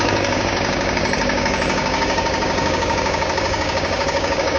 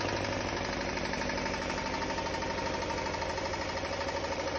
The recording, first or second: second